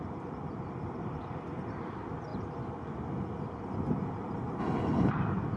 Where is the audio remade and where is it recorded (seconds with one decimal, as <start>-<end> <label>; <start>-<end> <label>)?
0.0-4.6 recorded; 4.6-5.1 remade; 5.1-5.6 recorded